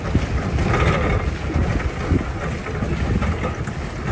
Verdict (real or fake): real